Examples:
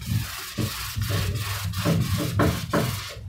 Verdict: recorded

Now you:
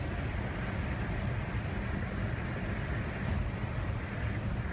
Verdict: recorded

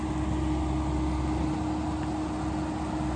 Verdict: recorded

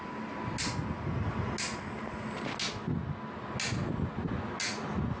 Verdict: recorded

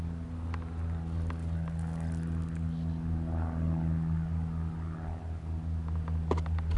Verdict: recorded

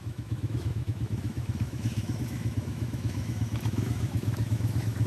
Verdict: remade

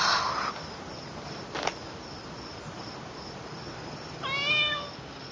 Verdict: recorded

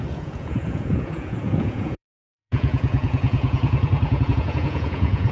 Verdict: remade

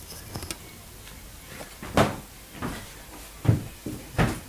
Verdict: recorded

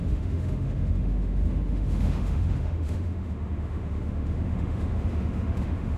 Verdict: remade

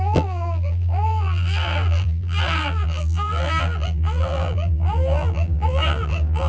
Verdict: remade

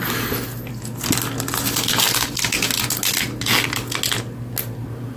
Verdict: recorded